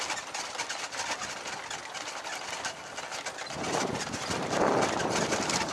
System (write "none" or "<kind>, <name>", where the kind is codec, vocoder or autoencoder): none